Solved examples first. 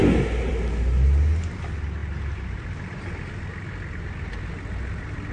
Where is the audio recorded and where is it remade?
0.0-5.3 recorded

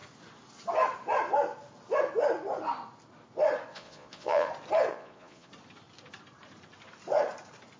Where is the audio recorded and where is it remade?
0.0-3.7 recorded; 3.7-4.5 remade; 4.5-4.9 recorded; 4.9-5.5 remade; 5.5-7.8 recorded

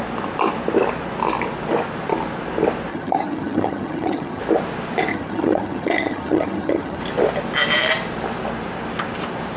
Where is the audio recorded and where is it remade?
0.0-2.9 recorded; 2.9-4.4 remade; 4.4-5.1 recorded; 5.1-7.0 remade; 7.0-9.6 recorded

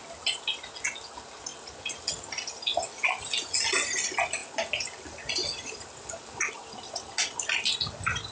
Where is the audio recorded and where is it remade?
0.0-8.3 recorded